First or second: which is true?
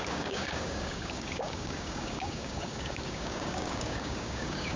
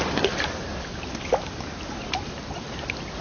second